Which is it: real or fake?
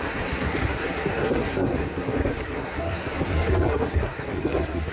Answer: fake